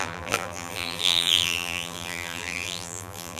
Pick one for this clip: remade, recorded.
remade